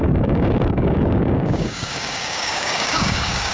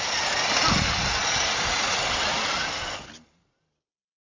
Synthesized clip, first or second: first